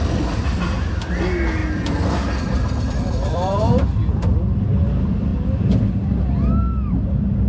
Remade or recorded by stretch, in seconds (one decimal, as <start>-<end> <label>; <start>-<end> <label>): 0.0-1.6 recorded; 1.6-4.7 remade; 4.7-5.3 recorded; 5.3-5.8 remade; 5.8-7.5 recorded